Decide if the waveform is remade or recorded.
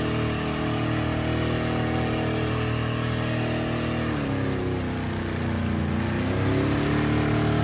recorded